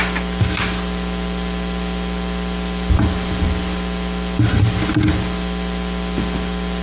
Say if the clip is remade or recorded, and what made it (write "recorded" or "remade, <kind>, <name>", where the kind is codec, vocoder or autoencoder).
recorded